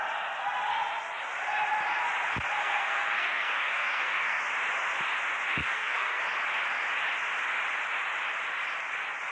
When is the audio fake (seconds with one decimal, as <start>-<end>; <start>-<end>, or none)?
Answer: 2.6-4.4; 5.5-6.2